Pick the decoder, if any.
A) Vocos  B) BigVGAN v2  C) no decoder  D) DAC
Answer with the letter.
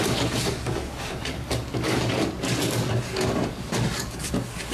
D